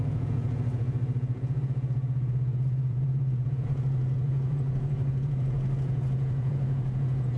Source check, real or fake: fake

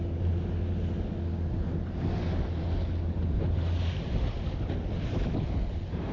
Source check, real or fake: real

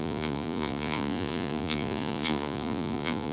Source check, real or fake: fake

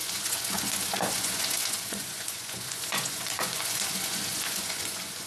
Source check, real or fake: fake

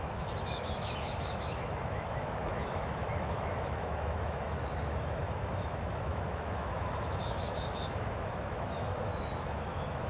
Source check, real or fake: fake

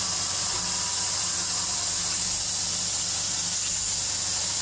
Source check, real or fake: real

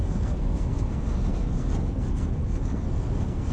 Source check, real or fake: fake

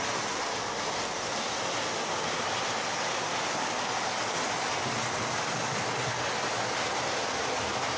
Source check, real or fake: real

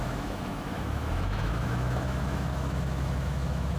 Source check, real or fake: fake